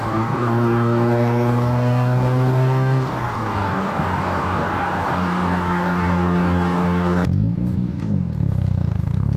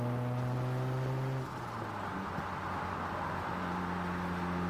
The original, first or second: second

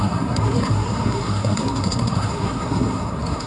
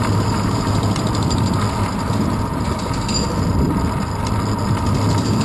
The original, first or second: second